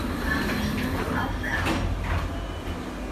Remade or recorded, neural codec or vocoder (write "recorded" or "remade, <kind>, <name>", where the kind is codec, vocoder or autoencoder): recorded